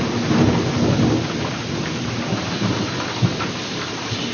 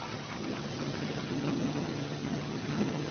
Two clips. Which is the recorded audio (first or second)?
first